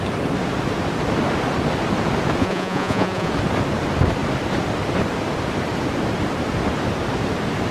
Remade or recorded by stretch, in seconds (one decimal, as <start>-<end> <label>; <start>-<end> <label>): 0.0-2.4 recorded; 2.4-3.3 remade; 3.3-7.7 recorded